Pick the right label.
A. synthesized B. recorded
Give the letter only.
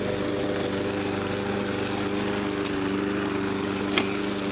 B